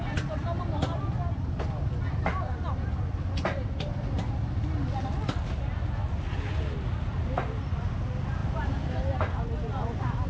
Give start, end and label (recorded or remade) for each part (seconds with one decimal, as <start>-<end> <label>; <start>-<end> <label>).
0.0-10.3 recorded